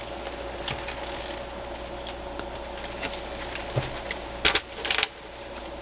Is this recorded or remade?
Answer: recorded